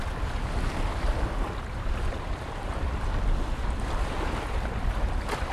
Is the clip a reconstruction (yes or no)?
no